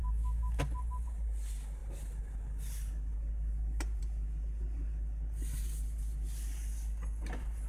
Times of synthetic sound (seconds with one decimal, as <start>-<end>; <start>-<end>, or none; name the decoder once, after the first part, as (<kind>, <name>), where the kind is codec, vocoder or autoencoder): 0.0-0.6 (autoencoder, DAC-VAE)